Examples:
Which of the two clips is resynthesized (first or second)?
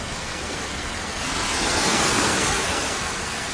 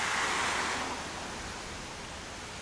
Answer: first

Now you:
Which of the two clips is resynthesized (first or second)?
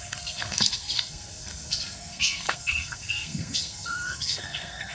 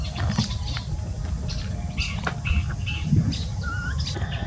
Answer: first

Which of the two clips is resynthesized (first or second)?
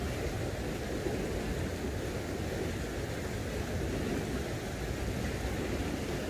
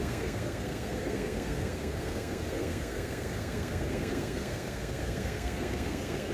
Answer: second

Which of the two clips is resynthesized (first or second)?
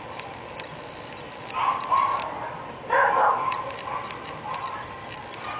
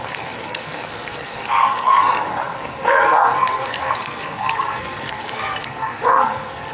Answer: second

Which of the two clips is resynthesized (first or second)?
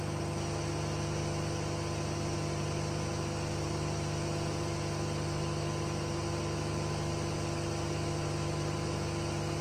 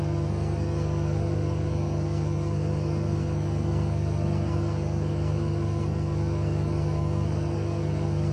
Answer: second